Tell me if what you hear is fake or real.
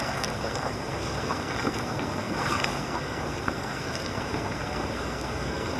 fake